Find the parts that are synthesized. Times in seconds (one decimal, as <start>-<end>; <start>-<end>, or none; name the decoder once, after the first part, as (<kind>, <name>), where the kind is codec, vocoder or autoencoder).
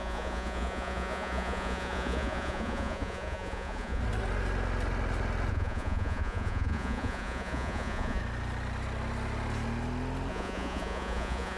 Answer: 0.0-4.0 (vocoder, Vocos); 5.5-8.2; 10.3-11.6